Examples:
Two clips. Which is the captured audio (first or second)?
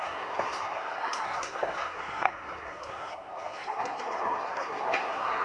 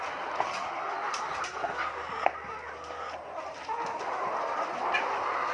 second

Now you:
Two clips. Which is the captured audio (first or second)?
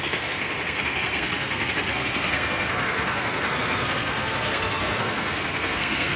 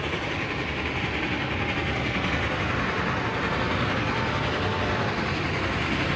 second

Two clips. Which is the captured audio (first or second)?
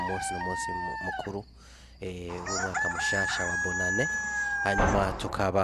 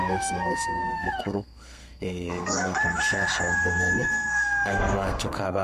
first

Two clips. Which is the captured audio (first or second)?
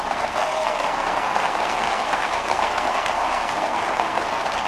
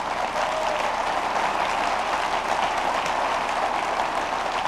second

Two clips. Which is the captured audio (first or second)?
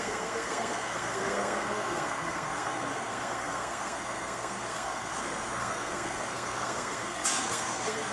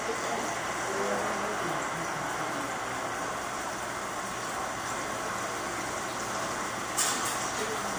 second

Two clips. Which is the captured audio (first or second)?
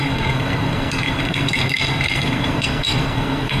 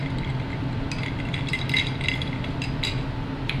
second